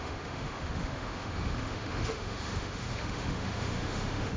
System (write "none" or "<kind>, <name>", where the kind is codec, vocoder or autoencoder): autoencoder, DAC-VAE